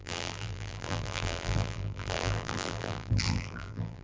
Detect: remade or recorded remade